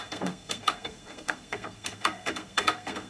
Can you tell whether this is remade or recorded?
remade